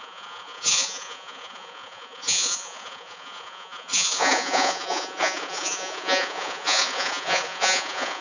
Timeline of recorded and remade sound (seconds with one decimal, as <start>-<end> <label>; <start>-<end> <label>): 0.0-8.2 remade